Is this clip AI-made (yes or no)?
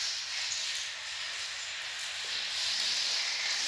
no